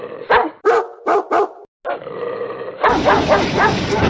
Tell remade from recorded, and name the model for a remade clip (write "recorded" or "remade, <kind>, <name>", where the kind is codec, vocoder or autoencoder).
recorded